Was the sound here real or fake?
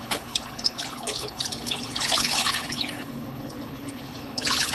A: fake